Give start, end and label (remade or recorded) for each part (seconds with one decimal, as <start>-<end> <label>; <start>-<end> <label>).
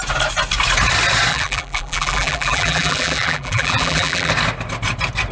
0.0-1.3 recorded; 1.3-4.3 remade; 4.3-5.3 recorded